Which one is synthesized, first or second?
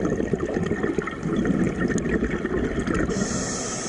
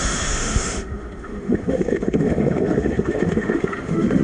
second